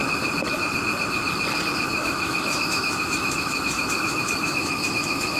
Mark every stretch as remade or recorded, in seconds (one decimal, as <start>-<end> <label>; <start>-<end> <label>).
0.0-1.9 recorded; 1.9-5.4 remade